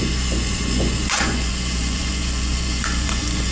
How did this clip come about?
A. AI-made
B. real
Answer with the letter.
A